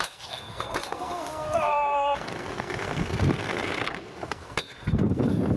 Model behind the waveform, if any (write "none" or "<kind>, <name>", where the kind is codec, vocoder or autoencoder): codec, SNAC